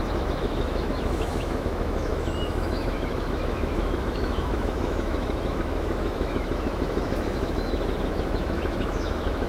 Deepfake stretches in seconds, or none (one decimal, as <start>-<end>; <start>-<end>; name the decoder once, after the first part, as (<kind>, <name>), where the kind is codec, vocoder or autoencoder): 0.0-9.5 (autoencoder, DAC-VAE)